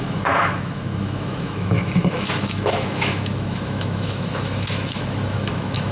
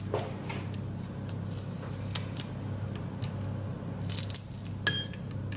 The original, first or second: second